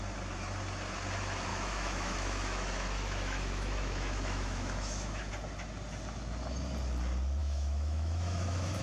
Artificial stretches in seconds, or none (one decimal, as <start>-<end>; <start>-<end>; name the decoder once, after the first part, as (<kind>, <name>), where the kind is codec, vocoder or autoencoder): 1.5-5.3 (autoencoder, DAC-VAE); 7.4-8.8